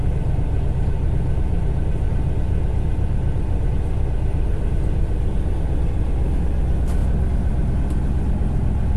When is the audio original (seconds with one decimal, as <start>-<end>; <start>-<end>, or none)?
0.0-9.0